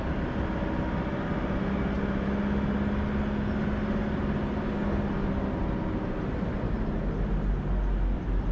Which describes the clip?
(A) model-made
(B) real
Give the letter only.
B